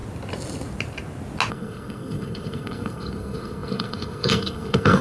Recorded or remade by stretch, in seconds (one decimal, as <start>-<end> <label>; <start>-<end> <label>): 0.0-1.5 recorded; 1.5-5.0 remade